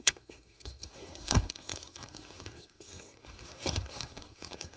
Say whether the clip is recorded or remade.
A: remade